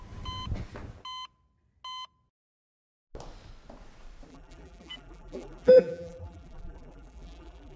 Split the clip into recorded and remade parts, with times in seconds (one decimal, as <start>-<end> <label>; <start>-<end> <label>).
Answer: 0.0-4.3 recorded; 4.3-7.8 remade